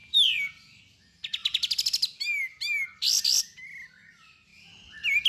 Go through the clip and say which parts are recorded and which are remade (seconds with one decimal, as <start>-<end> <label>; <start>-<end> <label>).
0.0-0.8 remade; 0.8-5.3 recorded